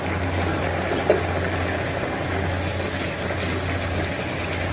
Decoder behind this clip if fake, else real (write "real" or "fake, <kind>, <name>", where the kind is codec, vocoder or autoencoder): real